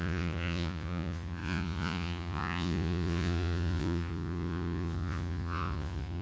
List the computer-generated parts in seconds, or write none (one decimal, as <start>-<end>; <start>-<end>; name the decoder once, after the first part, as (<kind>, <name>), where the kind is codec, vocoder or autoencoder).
0.0-6.2 (vocoder, Vocos)